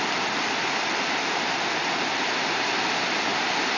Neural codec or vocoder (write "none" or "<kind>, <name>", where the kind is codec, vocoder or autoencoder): none